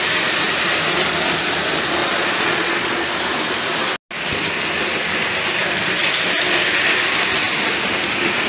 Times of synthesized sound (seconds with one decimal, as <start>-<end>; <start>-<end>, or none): 2.0-3.0

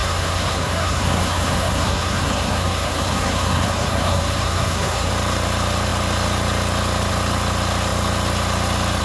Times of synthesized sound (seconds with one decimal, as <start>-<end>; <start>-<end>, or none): 0.0-5.1

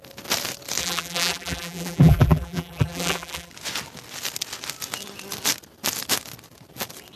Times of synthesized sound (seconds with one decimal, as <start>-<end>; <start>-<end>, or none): 0.8-3.5

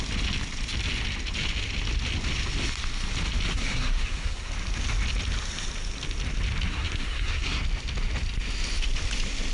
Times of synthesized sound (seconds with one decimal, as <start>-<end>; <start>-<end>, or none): 3.5-4.5; 6.7-7.6

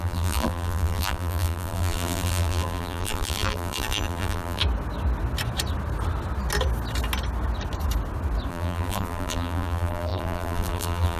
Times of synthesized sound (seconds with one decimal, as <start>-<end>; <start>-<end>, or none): 0.0-4.6; 8.5-11.2

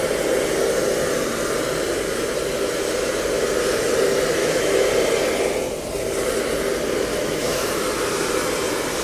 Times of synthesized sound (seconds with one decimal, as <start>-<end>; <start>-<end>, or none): 4.4-4.9; 7.1-7.8

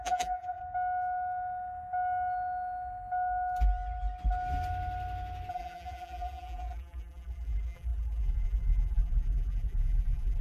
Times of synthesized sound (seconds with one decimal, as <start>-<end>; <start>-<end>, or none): 0.0-0.6; 5.5-10.4

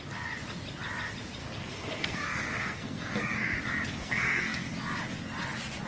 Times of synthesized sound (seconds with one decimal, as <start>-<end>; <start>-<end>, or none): 1.4-3.6; 4.0-4.7